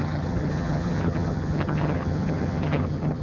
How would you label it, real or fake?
fake